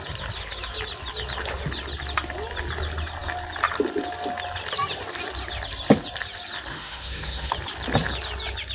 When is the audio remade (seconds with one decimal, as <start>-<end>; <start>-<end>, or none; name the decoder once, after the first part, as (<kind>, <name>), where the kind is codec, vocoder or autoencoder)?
6.7-7.5 (autoencoder, DAC-VAE)